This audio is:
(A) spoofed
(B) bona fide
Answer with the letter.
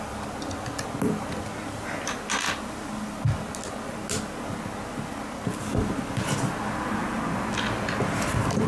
B